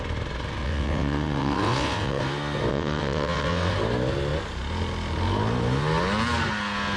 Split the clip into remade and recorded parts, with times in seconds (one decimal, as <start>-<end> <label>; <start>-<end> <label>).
0.0-0.6 recorded; 0.6-2.2 remade; 2.2-2.7 recorded; 2.7-3.7 remade; 3.7-7.0 recorded